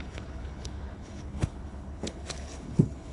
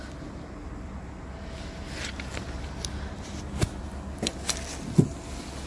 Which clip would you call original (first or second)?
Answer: second